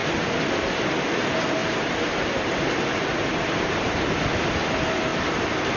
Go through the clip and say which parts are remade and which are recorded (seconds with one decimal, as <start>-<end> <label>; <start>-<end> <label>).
0.0-0.8 remade; 0.8-1.6 recorded; 1.6-4.0 remade; 4.0-5.1 recorded; 5.1-5.8 remade